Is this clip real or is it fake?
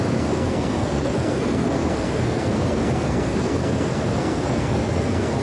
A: fake